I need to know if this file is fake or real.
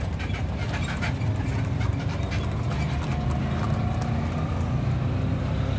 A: real